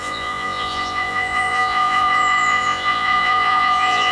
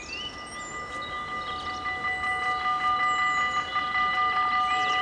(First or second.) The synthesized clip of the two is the first